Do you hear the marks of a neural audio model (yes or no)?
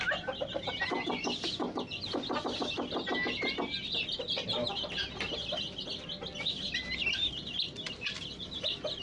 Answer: no